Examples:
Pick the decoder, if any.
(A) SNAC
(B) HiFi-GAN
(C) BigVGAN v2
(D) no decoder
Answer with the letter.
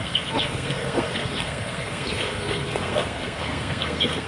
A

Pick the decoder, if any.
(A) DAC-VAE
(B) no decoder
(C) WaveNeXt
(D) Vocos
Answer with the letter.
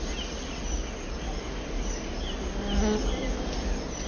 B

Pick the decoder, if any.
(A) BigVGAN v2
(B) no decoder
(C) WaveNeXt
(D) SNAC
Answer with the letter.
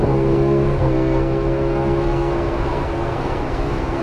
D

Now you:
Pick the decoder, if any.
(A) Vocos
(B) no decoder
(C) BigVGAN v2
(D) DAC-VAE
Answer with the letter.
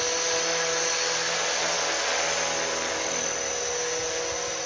B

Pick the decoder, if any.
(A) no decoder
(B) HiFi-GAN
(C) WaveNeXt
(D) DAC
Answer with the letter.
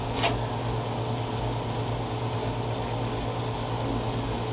A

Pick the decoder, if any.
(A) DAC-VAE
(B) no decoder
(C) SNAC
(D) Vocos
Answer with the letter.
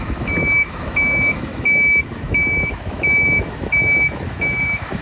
A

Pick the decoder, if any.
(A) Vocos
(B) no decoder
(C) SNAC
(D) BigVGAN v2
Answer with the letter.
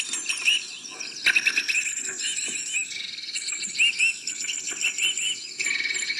B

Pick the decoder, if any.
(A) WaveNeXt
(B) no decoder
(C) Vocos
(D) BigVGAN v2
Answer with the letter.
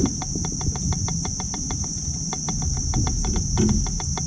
B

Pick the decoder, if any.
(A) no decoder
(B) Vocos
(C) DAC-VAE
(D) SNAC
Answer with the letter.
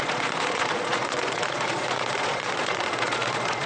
B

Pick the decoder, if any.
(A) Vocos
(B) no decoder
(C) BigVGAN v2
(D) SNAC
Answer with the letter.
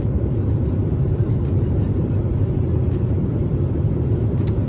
C